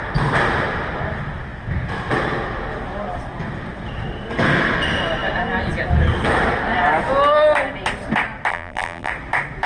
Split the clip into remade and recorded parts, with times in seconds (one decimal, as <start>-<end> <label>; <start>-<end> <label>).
0.0-8.5 recorded; 8.5-9.1 remade; 9.1-9.7 recorded